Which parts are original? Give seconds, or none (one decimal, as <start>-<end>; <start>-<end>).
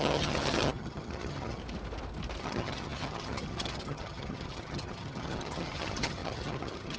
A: 1.6-2.4